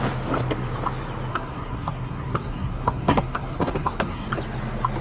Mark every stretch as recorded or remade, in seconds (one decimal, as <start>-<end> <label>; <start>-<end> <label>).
0.0-1.3 recorded; 1.3-4.3 remade; 4.3-5.0 recorded